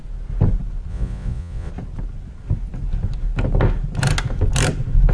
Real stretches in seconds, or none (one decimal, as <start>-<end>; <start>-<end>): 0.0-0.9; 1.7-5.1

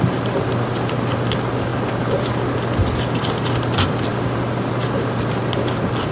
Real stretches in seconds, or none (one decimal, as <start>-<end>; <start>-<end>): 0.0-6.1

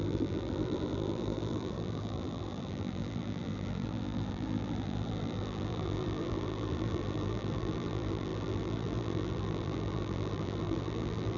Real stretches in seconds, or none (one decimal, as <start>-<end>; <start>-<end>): none

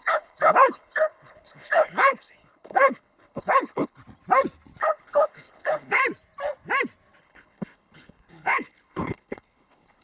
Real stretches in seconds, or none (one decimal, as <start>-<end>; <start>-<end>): 4.0-4.8; 6.0-7.2

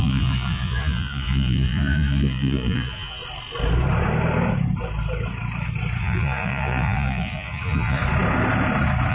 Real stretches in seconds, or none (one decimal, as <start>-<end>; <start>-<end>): 3.2-6.0; 8.0-9.1

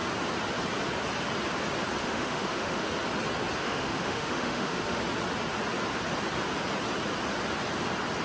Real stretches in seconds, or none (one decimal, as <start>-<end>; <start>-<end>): 0.0-2.0; 2.9-3.6; 5.0-8.2